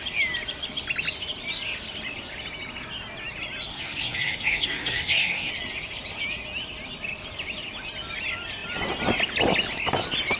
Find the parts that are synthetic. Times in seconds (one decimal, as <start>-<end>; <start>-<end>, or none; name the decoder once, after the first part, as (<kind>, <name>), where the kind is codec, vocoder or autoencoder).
3.7-5.5 (codec, SNAC)